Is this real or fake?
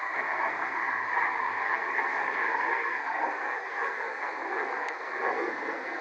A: fake